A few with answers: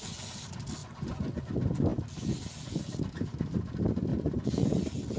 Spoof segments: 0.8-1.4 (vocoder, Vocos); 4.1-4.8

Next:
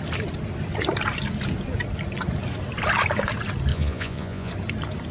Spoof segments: 3.7-4.5 (vocoder, Vocos)

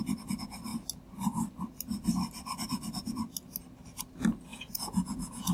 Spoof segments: 4.5-5.5 (vocoder, Vocos)

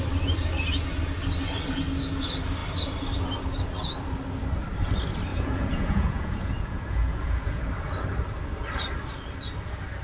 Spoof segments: 5.3-7.6 (vocoder, Vocos)

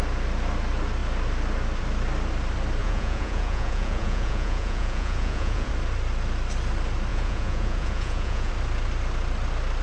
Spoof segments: 2.8-5.7 (vocoder, Vocos); 7.1-8.5

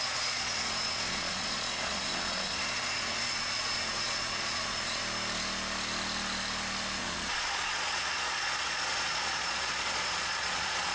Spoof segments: 0.0-5.0 (vocoder, Vocos); 7.0-10.9

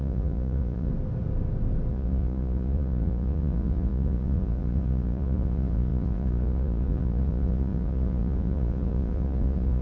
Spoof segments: 0.0-0.9 (vocoder, Vocos); 1.9-9.8

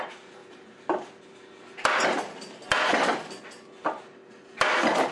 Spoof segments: none